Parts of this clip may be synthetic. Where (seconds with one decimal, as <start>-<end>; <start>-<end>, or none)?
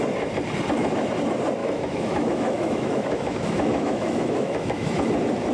1.6-4.9